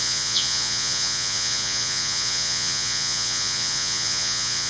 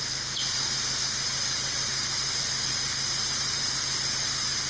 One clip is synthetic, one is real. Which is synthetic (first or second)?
first